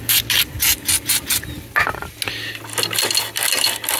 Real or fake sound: real